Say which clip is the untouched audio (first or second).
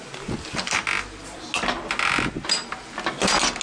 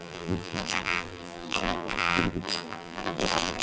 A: first